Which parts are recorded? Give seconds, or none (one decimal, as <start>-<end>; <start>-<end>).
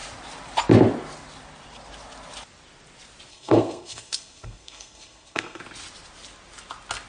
0.0-3.3; 5.6-7.1